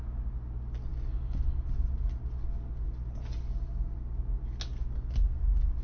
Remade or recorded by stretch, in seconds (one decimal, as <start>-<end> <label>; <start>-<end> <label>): 0.0-5.8 recorded